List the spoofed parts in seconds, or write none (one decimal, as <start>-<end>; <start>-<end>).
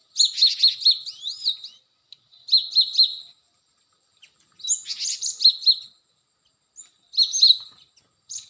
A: none